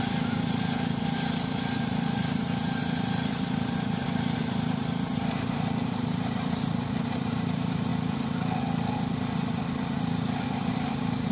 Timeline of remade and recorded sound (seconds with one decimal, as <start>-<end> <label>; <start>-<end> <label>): 0.0-7.9 remade; 7.9-10.7 recorded; 10.7-11.3 remade